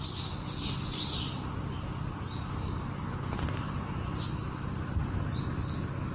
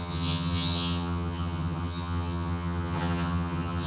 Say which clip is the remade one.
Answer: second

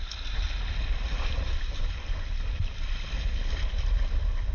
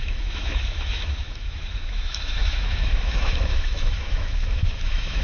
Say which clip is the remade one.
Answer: second